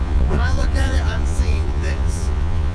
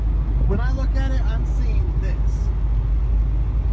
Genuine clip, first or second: second